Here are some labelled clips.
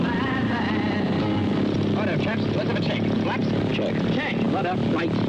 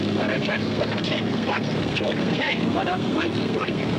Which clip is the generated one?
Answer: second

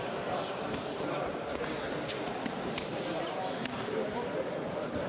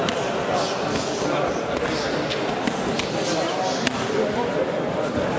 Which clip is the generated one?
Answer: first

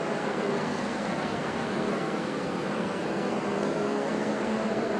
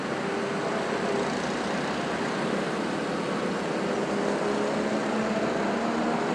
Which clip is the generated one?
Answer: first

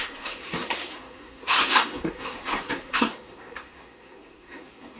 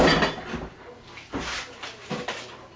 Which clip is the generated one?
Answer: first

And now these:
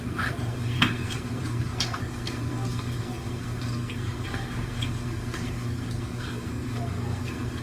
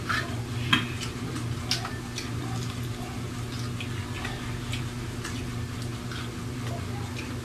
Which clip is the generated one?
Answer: first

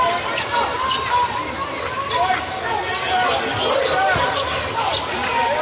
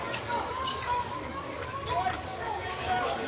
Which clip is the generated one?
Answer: second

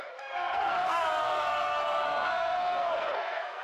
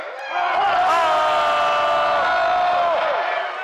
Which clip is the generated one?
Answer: first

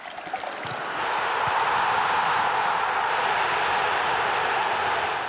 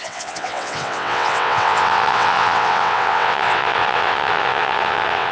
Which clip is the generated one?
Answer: second